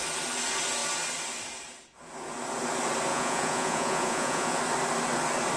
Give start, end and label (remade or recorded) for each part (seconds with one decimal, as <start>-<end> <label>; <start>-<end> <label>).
0.0-3.1 recorded; 3.1-4.6 remade; 4.6-5.6 recorded